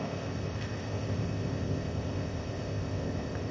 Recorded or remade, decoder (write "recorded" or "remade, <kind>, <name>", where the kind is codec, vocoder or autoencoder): remade, codec, ZipCodec